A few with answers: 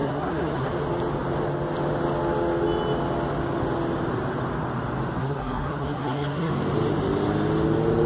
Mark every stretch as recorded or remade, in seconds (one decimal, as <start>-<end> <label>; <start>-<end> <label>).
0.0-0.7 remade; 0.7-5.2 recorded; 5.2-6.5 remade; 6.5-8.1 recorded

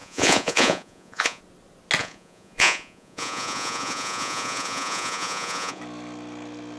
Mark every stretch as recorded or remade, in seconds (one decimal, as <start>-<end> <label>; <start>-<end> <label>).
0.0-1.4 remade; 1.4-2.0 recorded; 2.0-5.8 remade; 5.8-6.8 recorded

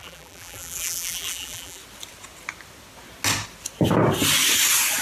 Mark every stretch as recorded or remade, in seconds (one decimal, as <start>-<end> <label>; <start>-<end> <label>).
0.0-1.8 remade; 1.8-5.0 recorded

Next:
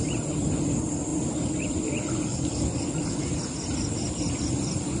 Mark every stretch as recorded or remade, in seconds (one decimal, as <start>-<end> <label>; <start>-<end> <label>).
0.0-5.0 recorded

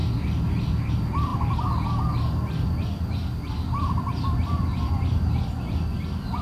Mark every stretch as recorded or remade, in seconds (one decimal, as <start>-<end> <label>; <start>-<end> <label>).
0.0-6.4 recorded

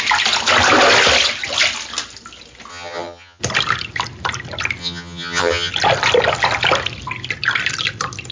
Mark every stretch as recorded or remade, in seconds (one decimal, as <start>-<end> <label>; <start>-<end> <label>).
0.0-2.7 recorded; 2.7-3.4 remade; 3.4-4.8 recorded; 4.8-5.7 remade; 5.7-8.3 recorded

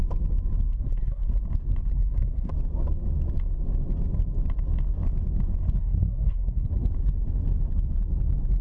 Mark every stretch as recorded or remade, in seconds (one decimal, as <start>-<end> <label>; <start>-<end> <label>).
0.0-0.7 recorded; 0.7-1.3 remade; 1.3-1.9 recorded; 1.9-2.5 remade; 2.5-5.8 recorded; 5.8-6.7 remade; 6.7-8.6 recorded

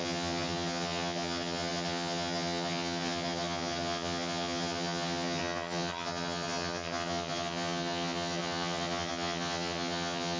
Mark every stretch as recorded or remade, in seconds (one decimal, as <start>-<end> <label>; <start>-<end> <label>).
0.0-10.4 remade